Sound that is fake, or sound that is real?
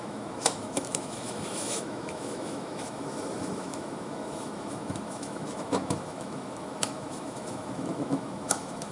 fake